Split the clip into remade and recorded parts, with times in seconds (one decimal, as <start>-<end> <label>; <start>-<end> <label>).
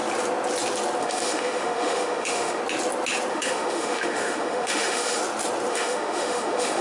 0.0-1.0 recorded; 1.0-2.6 remade; 2.6-3.3 recorded; 3.3-5.2 remade; 5.2-5.7 recorded; 5.7-6.8 remade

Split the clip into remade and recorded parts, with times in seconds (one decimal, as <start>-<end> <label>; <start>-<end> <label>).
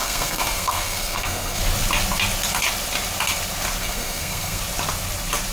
0.0-1.6 remade; 1.6-3.8 recorded; 3.8-4.6 remade; 4.6-5.5 recorded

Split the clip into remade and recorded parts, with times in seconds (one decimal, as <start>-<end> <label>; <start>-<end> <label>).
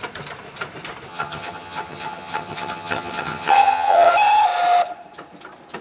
0.0-1.1 recorded; 1.1-4.1 remade; 4.1-5.8 recorded